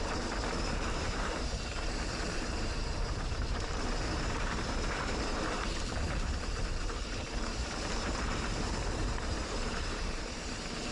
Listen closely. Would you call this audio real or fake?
fake